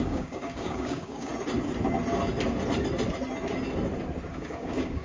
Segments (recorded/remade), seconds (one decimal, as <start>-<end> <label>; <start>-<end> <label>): 0.0-1.3 remade; 1.3-4.3 recorded; 4.3-5.0 remade

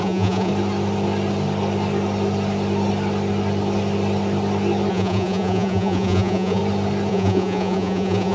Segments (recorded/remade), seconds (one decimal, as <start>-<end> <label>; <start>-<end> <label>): 0.0-0.5 remade; 0.5-4.9 recorded; 4.9-6.6 remade; 6.6-7.1 recorded; 7.1-8.3 remade

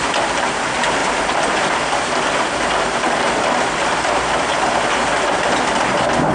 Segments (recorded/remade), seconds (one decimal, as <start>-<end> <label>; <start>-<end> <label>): 0.0-6.3 recorded

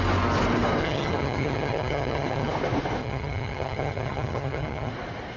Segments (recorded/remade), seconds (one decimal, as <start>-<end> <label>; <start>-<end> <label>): 0.0-0.8 recorded; 0.8-2.5 remade; 2.5-3.0 recorded; 3.0-4.9 remade; 4.9-5.4 recorded

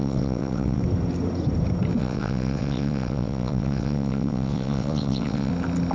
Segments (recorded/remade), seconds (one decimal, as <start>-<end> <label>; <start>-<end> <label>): 0.0-0.8 remade; 0.8-2.0 recorded; 2.0-5.5 remade; 5.5-5.9 recorded

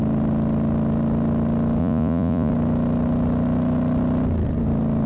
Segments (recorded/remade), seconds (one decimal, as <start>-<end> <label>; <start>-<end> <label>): 0.0-1.8 recorded; 1.8-2.5 remade; 2.5-5.1 recorded

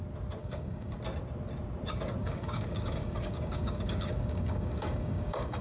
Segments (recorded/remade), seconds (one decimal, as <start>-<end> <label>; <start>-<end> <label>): 0.0-0.4 recorded; 0.4-1.0 remade; 1.0-2.2 recorded; 2.2-5.6 remade